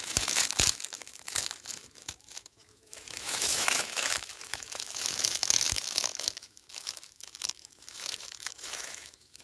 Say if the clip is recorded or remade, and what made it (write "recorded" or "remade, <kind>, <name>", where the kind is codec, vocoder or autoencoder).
remade, autoencoder, DAC-VAE